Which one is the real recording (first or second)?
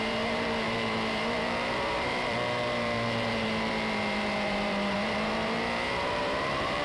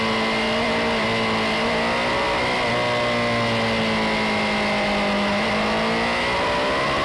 second